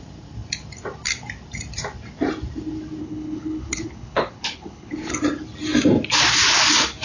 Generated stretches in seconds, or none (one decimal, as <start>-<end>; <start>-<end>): 3.0-5.1